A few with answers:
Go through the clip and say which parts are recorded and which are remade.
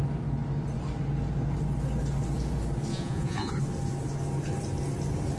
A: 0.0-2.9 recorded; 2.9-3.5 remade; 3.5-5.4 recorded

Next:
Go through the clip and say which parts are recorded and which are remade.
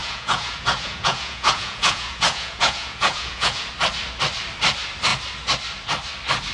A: 0.0-3.7 remade; 3.7-6.5 recorded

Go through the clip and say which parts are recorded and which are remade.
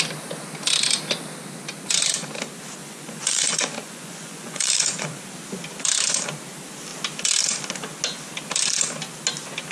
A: 0.0-2.8 recorded; 2.8-5.2 remade; 5.2-9.7 recorded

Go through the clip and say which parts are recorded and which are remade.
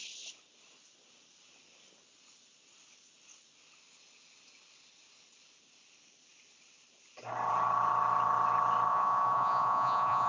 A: 0.0-8.9 recorded; 8.9-10.3 remade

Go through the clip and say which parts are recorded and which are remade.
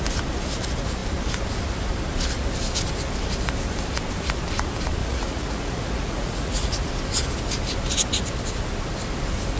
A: 0.0-5.0 recorded; 5.0-6.9 remade; 6.9-9.6 recorded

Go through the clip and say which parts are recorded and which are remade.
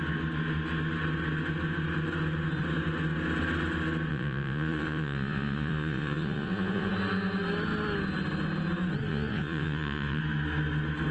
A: 0.0-4.1 recorded; 4.1-6.9 remade; 6.9-9.1 recorded; 9.1-10.2 remade; 10.2-11.1 recorded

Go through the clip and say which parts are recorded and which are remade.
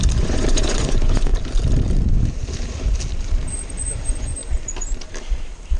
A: 0.0-1.3 remade; 1.3-4.0 recorded; 4.0-4.4 remade; 4.4-5.8 recorded